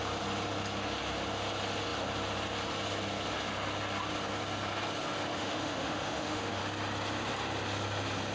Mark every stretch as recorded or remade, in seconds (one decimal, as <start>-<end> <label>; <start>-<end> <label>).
0.0-5.3 recorded; 5.3-6.6 remade; 6.6-8.3 recorded